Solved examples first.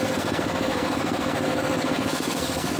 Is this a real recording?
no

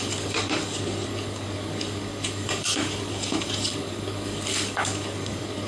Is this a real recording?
no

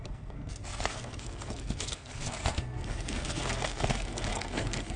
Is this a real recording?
no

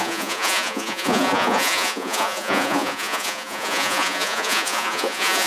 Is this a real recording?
no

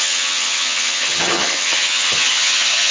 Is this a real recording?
no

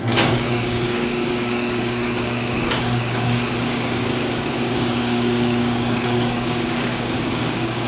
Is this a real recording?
no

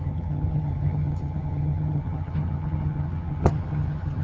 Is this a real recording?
no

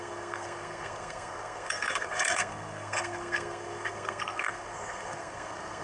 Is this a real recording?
no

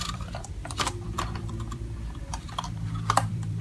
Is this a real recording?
no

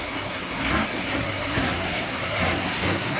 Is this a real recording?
no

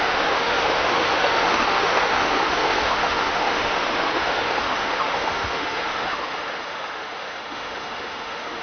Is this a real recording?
no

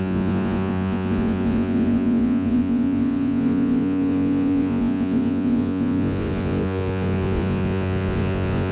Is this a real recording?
no